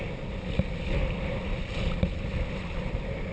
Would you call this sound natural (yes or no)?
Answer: yes